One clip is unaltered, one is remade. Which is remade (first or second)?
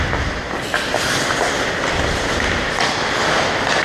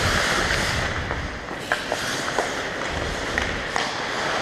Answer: first